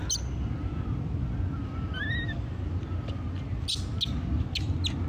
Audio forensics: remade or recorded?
recorded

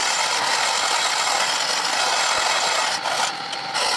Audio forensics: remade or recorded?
recorded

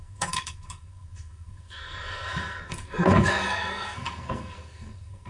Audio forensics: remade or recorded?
remade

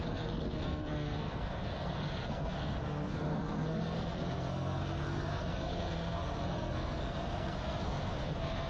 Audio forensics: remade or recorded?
remade